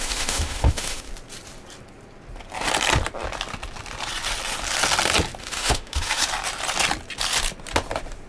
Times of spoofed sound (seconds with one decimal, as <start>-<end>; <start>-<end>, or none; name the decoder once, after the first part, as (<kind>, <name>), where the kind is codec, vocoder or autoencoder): 0.0-1.1 (autoencoder, DAC-VAE); 5.4-6.2